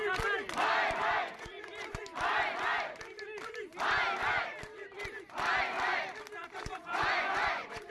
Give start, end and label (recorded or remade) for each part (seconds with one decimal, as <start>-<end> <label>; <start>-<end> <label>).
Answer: 0.0-1.0 recorded; 1.0-2.0 remade; 2.0-6.4 recorded; 6.4-7.9 remade